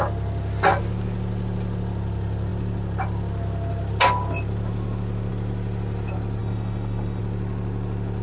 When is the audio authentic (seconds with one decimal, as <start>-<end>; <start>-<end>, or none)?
0.0-6.4; 7.2-8.2